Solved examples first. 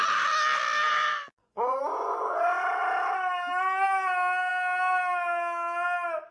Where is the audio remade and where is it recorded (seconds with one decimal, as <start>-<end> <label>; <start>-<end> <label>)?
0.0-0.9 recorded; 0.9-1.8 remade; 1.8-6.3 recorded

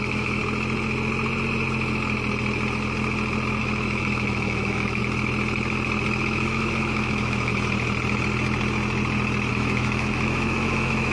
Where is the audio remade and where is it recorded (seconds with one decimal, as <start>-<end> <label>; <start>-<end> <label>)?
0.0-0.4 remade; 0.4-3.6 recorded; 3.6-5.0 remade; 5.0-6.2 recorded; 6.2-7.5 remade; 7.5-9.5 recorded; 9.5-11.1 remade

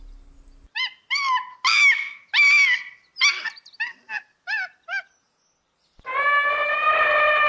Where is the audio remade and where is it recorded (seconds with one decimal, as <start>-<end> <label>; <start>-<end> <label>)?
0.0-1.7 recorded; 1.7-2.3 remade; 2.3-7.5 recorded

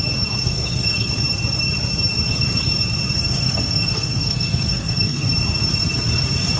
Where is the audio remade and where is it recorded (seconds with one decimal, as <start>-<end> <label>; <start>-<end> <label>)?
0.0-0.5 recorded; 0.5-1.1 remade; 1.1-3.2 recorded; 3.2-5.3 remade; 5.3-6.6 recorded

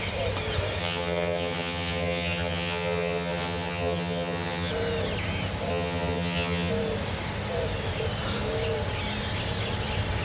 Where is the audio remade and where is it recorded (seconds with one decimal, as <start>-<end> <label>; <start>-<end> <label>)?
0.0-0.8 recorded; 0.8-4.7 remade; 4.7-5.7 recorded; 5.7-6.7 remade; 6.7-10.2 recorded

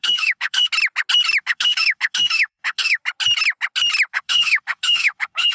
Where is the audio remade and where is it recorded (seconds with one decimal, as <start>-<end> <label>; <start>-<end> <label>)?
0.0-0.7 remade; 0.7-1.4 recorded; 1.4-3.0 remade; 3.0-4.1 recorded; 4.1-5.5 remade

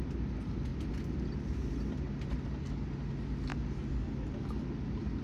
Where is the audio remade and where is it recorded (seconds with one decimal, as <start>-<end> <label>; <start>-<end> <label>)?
0.0-5.2 recorded